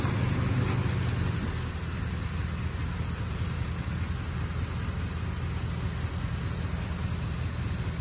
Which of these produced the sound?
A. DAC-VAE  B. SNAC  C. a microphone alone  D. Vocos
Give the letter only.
C